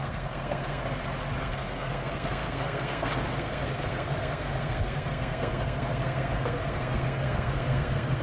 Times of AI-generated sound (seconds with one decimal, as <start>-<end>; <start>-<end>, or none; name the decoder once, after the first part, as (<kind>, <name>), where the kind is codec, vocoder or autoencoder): 0.0-0.8 (codec, SNAC); 1.4-8.2